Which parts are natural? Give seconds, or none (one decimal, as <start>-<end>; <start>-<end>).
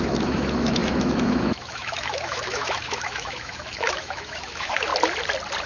4.9-5.7